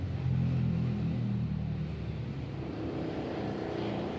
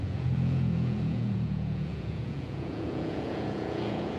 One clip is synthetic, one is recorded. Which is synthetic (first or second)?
second